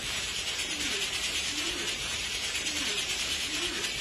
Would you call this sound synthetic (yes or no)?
yes